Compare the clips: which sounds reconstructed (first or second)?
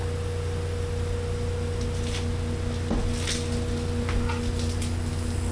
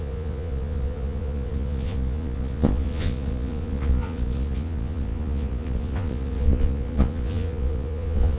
second